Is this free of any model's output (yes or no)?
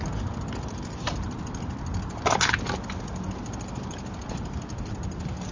yes